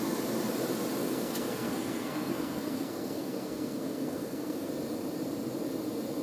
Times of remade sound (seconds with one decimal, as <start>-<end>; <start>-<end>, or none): 1.0-4.7